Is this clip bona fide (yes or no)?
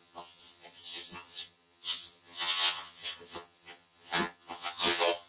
no